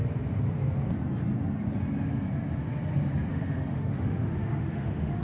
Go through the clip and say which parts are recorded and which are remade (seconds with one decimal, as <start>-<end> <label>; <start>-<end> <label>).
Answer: 0.0-3.3 recorded; 3.3-5.2 remade